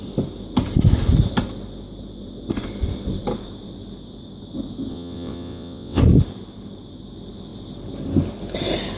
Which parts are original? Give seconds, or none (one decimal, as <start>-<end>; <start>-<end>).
0.0-4.9; 6.0-9.0